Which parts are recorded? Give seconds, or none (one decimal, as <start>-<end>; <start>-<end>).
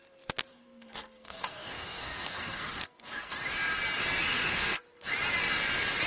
0.0-0.5; 3.3-4.2; 4.8-6.1